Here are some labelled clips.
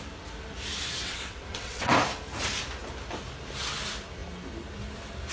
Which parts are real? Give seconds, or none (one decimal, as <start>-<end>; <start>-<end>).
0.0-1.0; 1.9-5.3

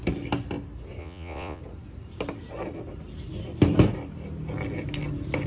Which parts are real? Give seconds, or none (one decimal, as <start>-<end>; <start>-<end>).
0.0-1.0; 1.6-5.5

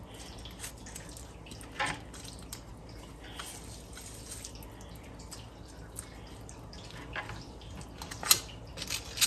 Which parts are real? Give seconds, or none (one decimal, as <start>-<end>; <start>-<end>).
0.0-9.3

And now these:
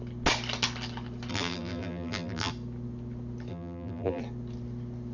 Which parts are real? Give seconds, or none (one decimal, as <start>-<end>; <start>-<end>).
0.0-1.3; 2.5-3.5; 4.2-5.1

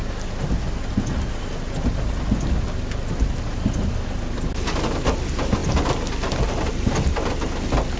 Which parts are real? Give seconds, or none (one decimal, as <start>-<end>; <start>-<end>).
0.0-8.0